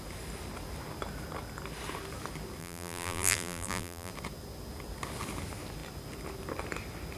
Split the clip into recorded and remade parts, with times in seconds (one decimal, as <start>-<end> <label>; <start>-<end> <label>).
0.0-2.6 recorded; 2.6-4.1 remade; 4.1-7.2 recorded